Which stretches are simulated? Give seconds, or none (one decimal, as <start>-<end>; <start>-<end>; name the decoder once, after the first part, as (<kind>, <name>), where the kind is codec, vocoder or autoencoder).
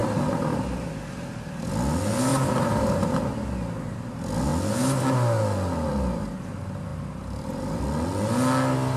0.0-0.9 (vocoder, BigVGAN v2); 2.3-3.2; 6.9-7.8